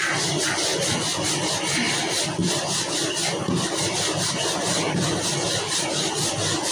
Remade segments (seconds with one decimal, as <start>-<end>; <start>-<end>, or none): none